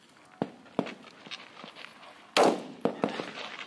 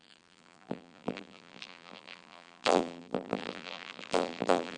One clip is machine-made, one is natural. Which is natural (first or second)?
first